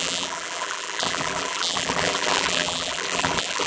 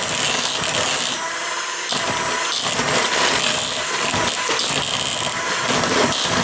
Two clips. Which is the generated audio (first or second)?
first